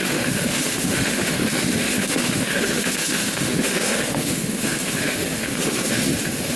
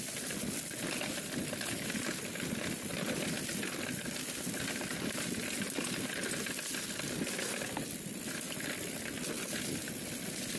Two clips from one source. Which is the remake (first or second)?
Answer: first